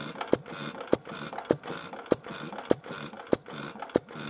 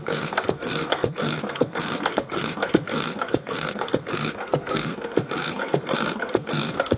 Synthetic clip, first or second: second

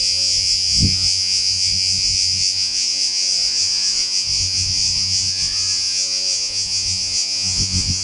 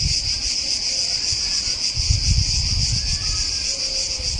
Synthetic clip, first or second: first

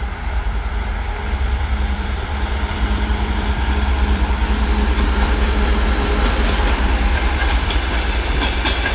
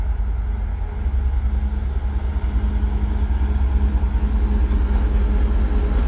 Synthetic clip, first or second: first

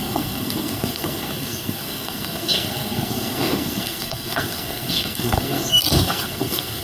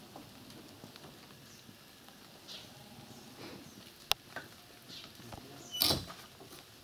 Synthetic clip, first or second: first